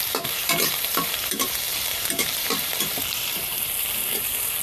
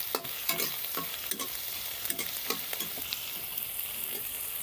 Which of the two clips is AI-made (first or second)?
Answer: first